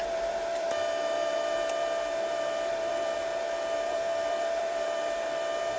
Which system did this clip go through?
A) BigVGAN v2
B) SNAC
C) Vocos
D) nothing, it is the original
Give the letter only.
A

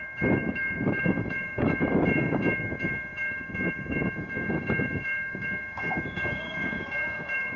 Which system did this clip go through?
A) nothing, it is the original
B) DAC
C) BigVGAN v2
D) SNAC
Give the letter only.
B